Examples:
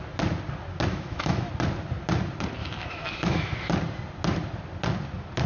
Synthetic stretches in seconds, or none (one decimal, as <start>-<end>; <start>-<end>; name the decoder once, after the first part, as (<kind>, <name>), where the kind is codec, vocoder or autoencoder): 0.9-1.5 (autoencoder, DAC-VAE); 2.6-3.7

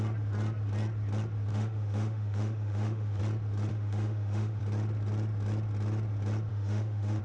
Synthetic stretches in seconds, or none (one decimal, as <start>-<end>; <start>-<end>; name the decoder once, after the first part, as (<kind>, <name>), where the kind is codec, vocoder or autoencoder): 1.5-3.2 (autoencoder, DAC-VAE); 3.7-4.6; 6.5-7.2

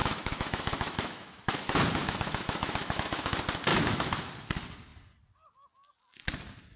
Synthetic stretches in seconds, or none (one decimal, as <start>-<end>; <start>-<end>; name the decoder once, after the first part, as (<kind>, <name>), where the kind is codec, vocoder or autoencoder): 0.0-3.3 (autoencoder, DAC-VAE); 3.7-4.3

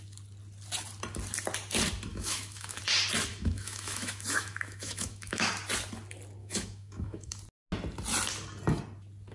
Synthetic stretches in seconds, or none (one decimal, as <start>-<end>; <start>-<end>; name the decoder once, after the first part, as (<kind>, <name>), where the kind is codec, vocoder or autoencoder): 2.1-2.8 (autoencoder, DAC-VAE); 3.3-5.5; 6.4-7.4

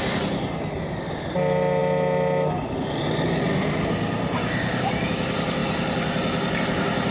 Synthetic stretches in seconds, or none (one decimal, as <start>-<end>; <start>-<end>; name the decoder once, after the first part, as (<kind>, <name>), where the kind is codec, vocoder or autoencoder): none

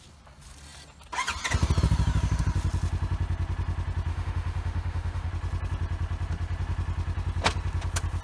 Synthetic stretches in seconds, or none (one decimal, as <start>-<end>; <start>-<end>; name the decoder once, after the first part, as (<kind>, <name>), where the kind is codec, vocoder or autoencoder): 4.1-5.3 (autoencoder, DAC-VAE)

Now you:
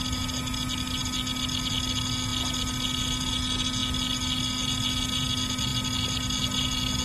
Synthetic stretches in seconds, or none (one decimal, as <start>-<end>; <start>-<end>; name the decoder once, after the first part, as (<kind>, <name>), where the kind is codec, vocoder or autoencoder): none